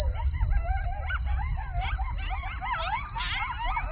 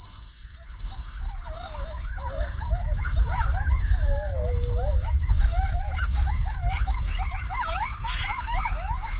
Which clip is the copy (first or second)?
second